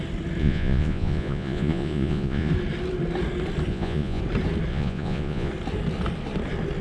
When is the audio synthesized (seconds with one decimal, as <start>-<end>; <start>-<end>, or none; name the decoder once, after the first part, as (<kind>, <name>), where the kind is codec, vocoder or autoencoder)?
0.4-2.5 (vocoder, Vocos); 3.7-4.2; 4.7-5.5

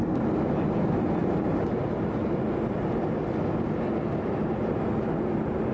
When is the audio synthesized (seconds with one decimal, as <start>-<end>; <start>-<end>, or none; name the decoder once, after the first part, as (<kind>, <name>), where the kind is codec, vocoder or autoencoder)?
1.2-2.1 (vocoder, BigVGAN v2)